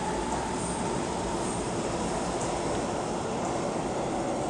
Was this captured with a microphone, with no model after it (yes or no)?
yes